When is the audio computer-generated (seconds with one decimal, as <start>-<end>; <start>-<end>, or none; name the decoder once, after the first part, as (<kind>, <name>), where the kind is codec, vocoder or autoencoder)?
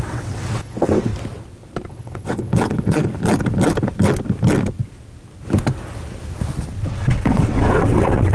0.0-1.1 (vocoder, WaveNeXt); 1.9-3.0; 6.8-8.3